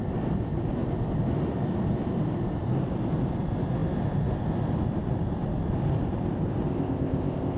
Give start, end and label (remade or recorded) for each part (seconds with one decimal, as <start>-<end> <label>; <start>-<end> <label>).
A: 0.0-6.7 recorded; 6.7-7.6 remade